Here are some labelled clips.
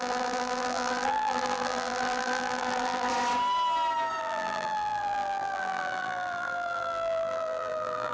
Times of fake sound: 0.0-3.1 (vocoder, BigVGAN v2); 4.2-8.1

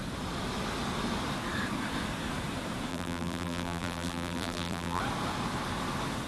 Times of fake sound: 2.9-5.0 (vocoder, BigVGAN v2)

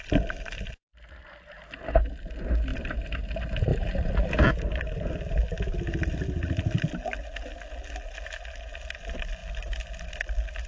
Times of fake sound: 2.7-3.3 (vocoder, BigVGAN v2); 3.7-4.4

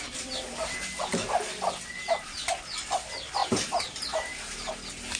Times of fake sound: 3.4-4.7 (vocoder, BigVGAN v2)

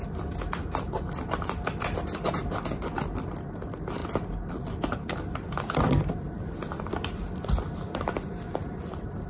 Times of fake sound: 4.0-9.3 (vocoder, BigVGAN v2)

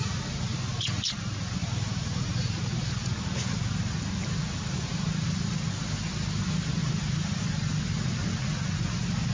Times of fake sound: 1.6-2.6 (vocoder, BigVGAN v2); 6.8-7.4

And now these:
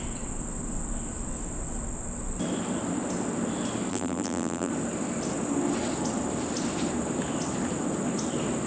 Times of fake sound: 3.9-4.7 (vocoder, BigVGAN v2)